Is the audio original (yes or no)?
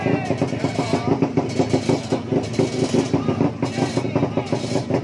yes